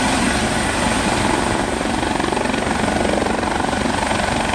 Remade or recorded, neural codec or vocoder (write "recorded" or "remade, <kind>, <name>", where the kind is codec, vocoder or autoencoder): recorded